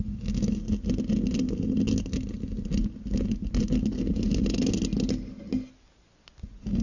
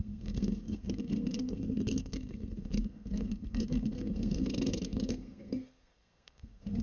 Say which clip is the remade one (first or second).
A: second